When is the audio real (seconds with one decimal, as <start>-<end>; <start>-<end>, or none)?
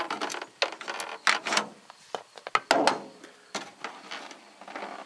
0.0-5.1